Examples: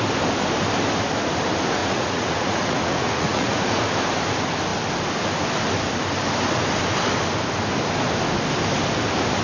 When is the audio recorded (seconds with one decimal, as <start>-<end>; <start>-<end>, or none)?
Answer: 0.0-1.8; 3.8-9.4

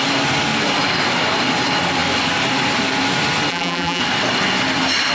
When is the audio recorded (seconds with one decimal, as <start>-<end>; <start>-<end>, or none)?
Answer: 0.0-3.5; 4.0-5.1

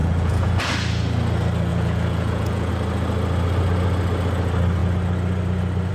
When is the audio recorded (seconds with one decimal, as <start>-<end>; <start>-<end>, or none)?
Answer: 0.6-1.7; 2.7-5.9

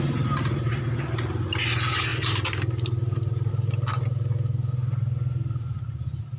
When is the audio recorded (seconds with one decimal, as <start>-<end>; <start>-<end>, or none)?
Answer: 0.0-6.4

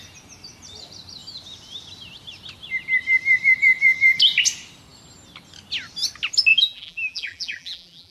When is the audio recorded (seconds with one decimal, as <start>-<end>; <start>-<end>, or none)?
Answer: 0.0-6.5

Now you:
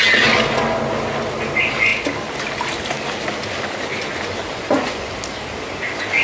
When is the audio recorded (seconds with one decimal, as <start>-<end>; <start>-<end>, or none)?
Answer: 0.0-4.4; 5.1-6.2

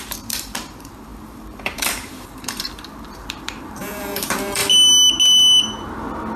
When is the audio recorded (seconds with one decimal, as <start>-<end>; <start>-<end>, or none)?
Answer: 4.6-6.4